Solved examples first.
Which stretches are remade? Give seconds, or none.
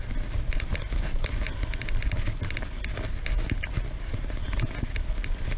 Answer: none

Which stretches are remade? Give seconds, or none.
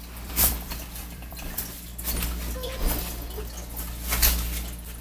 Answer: 0.0-1.9 (vocoder, BigVGAN v2)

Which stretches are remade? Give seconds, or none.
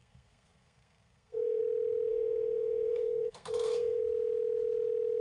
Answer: 0.0-1.6 (codec, SNAC); 2.1-4.0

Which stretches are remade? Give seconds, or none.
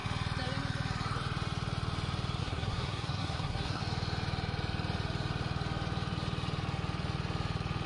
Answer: 2.4-3.8 (codec, SNAC)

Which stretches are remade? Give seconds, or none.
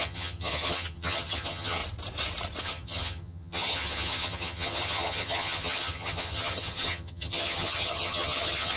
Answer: 0.0-1.8 (vocoder, HiFi-GAN); 2.6-8.8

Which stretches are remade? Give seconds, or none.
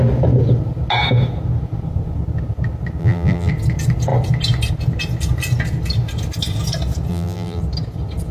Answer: 3.0-3.5 (vocoder, BigVGAN v2); 7.1-7.6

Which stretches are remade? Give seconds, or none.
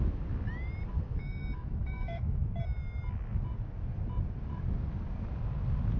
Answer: 0.9-2.5 (autoencoder, DAC-VAE)